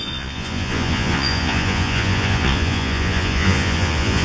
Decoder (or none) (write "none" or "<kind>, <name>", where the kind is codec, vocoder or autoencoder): vocoder, Vocos